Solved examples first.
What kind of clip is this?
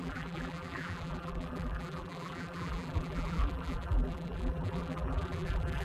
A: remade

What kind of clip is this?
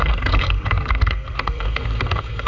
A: remade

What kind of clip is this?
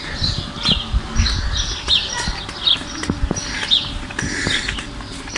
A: recorded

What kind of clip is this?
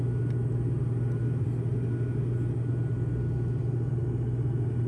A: recorded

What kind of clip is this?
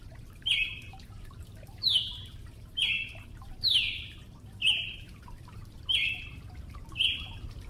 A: remade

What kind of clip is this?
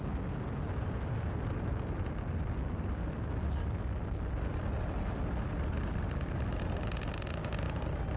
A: recorded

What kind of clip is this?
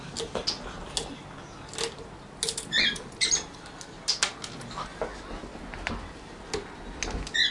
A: recorded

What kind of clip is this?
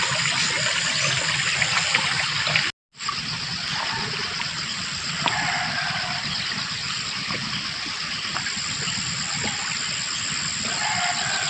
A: recorded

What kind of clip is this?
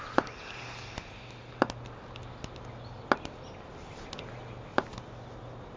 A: recorded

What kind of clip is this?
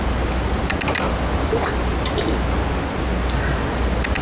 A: recorded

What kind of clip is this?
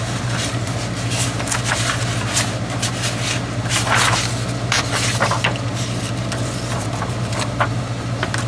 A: recorded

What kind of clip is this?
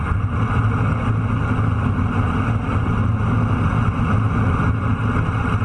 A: recorded